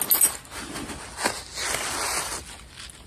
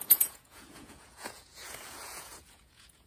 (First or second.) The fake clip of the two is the second